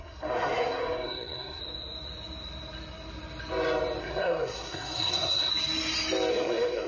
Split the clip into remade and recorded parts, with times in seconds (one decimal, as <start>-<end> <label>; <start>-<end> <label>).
0.0-1.6 remade; 1.6-4.0 recorded; 4.0-5.5 remade; 5.5-6.3 recorded; 6.3-6.9 remade